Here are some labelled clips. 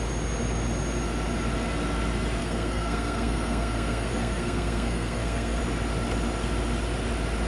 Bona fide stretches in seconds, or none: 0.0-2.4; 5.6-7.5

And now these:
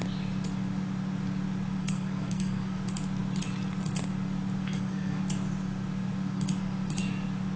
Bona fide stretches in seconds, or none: 0.0-1.8; 2.8-4.6; 5.2-7.6

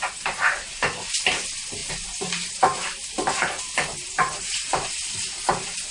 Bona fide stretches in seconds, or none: none

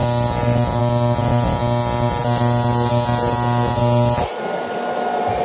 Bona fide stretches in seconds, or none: 0.0-5.4